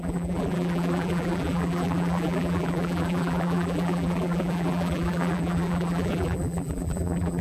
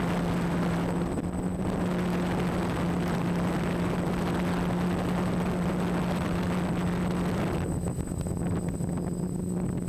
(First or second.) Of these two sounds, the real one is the second